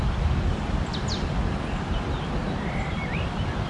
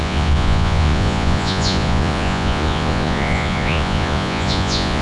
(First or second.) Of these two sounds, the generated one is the second